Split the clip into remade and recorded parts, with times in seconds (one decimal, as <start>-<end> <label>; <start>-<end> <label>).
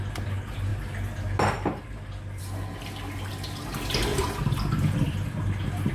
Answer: 0.0-4.1 recorded; 4.1-5.3 remade; 5.3-5.9 recorded